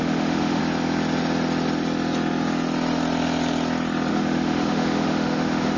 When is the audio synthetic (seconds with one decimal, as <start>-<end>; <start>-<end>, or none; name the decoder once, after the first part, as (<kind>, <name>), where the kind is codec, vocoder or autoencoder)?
0.0-0.6 (autoencoder, DAC-VAE); 4.1-5.8